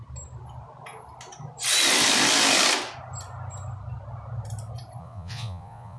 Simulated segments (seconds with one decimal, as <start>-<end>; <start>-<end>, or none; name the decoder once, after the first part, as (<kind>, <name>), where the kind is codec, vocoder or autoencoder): 5.0-6.0 (vocoder, Vocos)